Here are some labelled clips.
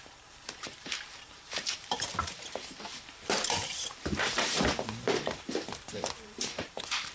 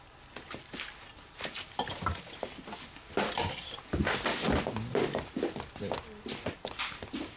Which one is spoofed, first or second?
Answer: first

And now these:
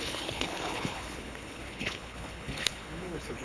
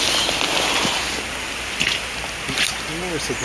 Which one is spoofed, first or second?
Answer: first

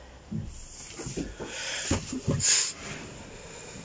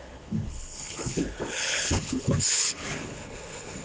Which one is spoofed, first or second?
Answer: second